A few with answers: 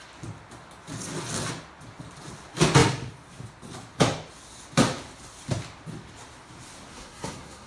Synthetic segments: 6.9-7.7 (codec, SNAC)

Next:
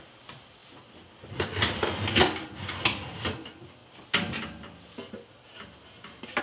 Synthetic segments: none

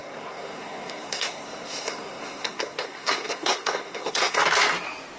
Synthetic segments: 0.0-4.4 (codec, SNAC)

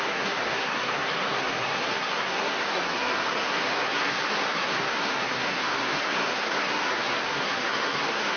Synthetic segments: 0.0-8.4 (codec, SNAC)

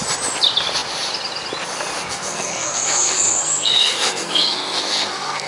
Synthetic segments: 2.1-5.5 (codec, SNAC)